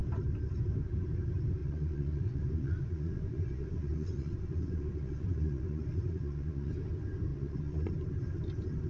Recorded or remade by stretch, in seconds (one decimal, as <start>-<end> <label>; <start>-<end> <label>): 0.0-1.6 recorded; 1.6-6.7 remade; 6.7-7.3 recorded; 7.3-7.9 remade; 7.9-8.9 recorded